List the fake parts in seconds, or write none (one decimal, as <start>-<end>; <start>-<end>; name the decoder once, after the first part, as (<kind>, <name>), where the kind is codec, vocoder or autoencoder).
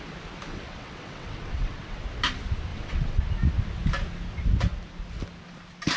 0.5-2.0 (vocoder, WaveNeXt); 2.7-3.2